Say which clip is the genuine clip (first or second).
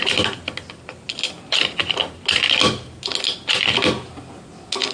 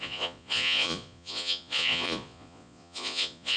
first